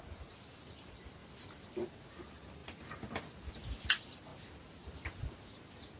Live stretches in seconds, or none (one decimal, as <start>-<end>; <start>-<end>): 0.0-1.2; 1.9-4.3; 5.6-6.0